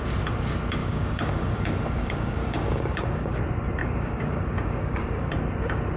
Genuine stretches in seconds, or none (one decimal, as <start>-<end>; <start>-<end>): 0.0-0.8; 3.4-3.8; 5.3-6.0